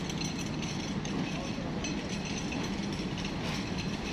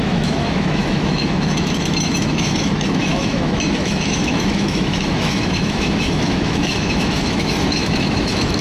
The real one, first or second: first